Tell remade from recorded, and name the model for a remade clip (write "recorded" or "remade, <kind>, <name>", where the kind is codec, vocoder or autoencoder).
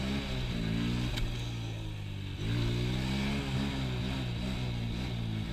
recorded